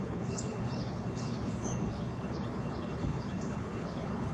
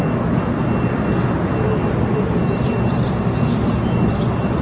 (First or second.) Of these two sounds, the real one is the second